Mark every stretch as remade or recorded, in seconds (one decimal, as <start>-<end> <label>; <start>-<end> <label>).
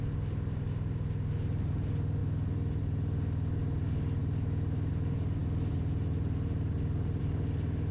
0.0-7.9 recorded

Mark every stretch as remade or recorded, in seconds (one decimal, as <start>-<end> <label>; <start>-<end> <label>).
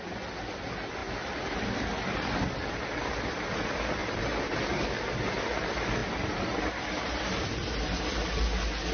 0.0-4.0 recorded; 4.0-4.6 remade; 4.6-6.0 recorded; 6.0-6.6 remade; 6.6-8.9 recorded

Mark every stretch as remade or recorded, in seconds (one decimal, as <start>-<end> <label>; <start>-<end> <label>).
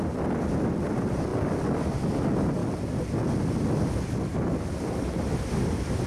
0.0-6.1 recorded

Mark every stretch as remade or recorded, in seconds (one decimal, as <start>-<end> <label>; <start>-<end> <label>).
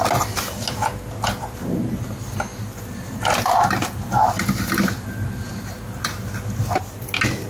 0.0-7.5 recorded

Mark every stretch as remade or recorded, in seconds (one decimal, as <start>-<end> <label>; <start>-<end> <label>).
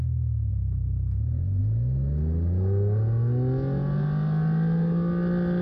0.0-0.5 recorded; 0.5-1.6 remade; 1.6-5.6 recorded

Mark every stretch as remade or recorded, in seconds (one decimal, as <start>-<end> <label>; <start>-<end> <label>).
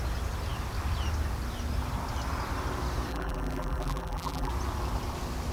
0.0-3.1 recorded; 3.1-4.5 remade; 4.5-5.5 recorded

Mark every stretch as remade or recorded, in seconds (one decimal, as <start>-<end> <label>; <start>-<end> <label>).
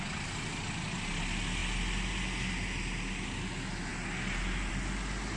0.0-5.4 recorded